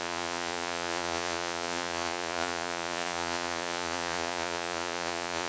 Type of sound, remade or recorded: remade